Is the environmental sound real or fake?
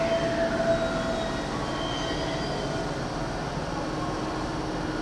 real